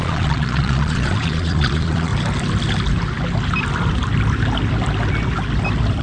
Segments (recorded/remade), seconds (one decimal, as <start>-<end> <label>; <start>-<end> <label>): 0.0-2.1 remade; 2.1-6.0 recorded